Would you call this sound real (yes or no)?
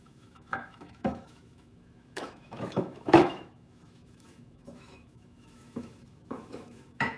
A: no